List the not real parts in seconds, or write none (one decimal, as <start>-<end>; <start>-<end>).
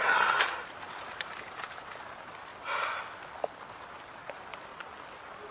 0.0-2.5; 3.7-4.7